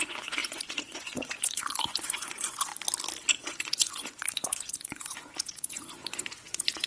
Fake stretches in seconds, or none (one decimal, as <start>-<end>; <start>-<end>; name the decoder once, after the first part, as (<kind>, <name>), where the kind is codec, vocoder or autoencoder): 0.0-2.7 (vocoder, Vocos); 3.4-6.9